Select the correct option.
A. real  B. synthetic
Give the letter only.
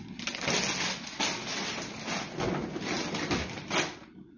A